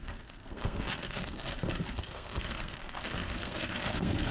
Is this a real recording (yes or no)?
no